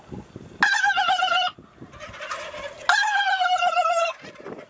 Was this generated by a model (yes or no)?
no